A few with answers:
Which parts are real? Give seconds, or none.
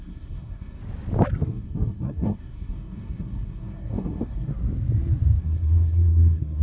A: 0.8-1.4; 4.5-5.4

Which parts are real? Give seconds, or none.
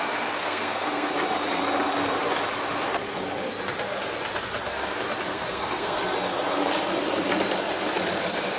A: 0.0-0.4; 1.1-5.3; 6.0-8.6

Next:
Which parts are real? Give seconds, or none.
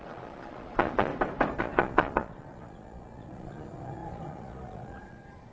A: 1.1-1.6